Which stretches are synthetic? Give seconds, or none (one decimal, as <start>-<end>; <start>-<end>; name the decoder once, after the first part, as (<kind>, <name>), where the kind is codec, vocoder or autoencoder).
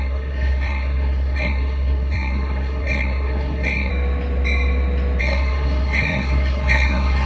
0.0-3.9 (codec, SNAC); 5.2-7.3